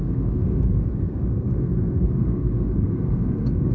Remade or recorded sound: remade